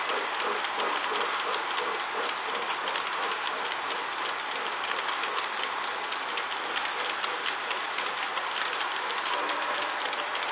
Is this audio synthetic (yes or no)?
no